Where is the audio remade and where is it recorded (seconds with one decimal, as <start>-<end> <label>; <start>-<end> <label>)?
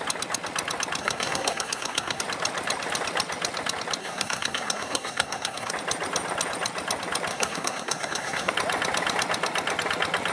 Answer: 0.0-1.0 recorded; 1.0-2.2 remade; 2.2-4.0 recorded; 4.0-5.7 remade; 5.7-7.3 recorded; 7.3-8.5 remade; 8.5-10.3 recorded